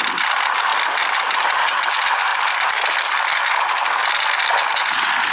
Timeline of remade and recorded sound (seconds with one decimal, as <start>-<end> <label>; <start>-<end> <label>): 0.0-5.3 recorded